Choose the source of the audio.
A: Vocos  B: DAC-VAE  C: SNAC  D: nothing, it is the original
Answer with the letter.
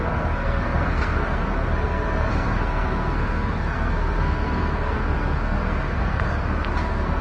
C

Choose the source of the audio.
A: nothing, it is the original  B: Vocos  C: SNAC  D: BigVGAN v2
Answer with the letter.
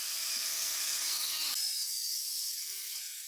C